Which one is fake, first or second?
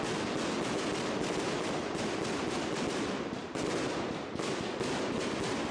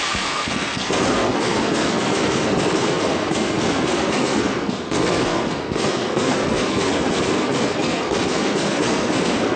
second